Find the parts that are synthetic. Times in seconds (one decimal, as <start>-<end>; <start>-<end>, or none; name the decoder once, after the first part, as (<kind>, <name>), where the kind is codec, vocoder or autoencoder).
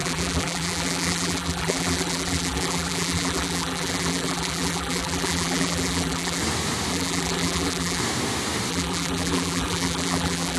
0.0-6.4 (vocoder, BigVGAN v2); 6.9-8.0; 8.7-10.6